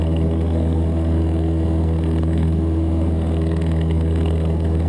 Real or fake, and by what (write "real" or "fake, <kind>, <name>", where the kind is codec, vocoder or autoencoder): fake, codec, SNAC